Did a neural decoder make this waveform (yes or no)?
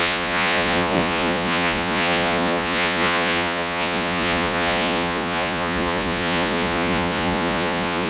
yes